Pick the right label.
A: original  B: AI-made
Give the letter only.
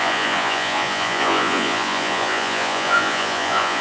B